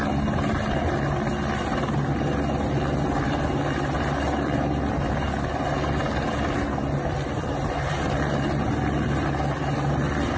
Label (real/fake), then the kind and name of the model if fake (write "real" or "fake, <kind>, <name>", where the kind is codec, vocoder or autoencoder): real